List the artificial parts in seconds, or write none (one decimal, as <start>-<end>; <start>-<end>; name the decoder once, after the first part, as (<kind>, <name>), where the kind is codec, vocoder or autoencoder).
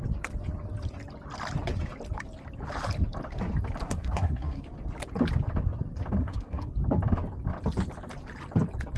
3.8-4.6 (codec, SNAC); 6.2-6.7